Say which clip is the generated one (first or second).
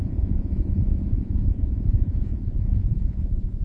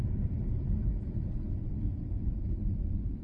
first